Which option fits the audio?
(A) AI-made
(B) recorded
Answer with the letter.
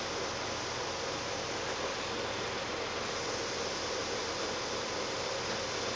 B